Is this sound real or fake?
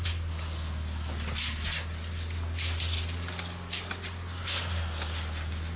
real